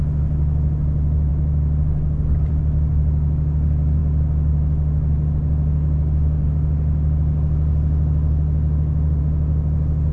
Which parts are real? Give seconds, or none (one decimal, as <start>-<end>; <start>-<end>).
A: 0.0-10.1